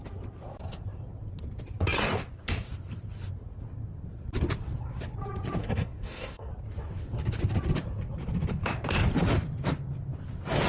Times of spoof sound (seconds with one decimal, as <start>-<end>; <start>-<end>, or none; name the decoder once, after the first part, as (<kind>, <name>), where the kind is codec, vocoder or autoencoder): 5.6-6.5 (codec, SNAC)